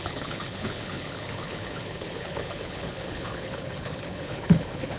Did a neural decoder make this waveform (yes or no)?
yes